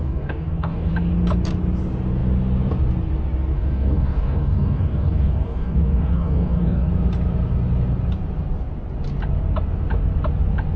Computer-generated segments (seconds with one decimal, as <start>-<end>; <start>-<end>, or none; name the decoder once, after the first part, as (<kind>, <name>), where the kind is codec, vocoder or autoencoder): 0.0-0.9 (codec, DAC); 3.5-6.9